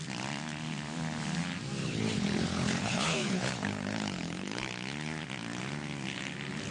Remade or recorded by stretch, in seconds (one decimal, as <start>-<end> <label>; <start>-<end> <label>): 0.0-1.8 recorded; 1.8-4.7 remade; 4.7-6.7 recorded